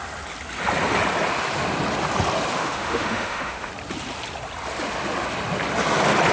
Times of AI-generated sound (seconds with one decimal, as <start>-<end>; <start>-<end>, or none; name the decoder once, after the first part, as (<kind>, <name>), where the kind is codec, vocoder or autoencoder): 2.5-3.7 (autoencoder, DAC-VAE)